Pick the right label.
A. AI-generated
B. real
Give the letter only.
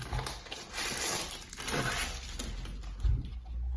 B